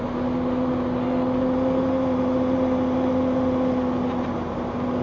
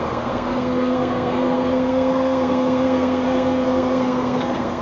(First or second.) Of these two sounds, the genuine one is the first